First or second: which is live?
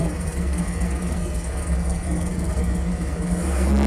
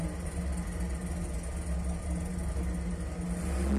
second